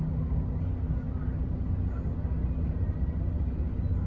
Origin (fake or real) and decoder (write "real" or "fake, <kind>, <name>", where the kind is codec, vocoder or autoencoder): real